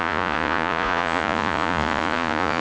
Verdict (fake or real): fake